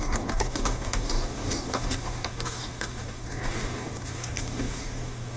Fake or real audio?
fake